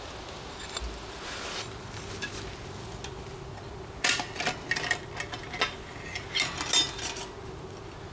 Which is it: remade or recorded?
recorded